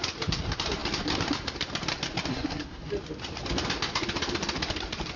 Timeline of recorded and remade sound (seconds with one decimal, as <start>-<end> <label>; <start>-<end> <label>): 0.0-2.3 recorded; 2.3-2.9 remade; 2.9-5.2 recorded